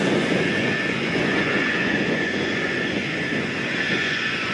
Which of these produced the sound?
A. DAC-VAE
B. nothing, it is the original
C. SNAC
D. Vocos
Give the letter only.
D